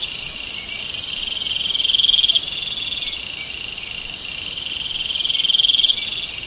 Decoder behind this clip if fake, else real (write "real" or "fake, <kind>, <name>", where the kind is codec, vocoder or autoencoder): real